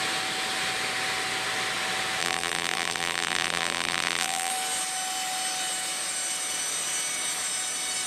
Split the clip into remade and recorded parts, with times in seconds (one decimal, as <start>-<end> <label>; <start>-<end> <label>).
0.0-2.2 recorded; 2.2-4.5 remade; 4.5-8.1 recorded